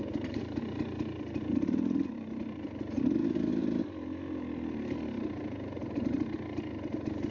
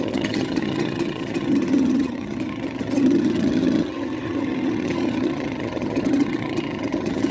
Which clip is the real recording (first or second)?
first